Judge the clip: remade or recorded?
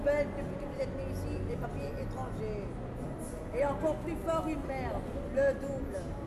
recorded